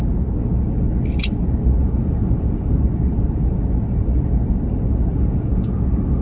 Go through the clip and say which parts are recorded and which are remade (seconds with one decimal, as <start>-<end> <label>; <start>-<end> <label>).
0.0-1.8 recorded; 1.8-2.8 remade; 2.8-5.1 recorded; 5.1-5.8 remade; 5.8-6.2 recorded